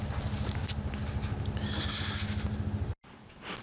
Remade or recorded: recorded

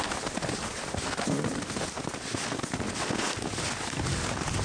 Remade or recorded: recorded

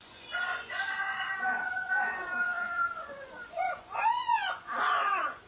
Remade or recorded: remade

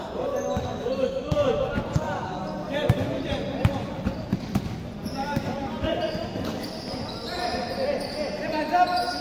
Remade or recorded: recorded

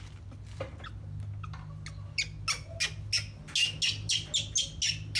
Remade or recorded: recorded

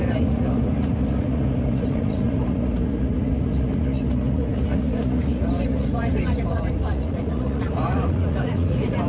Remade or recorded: remade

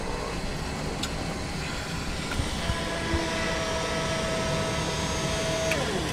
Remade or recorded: recorded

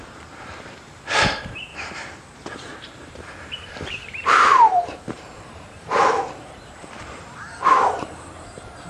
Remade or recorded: remade